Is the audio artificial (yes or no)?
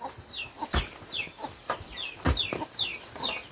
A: no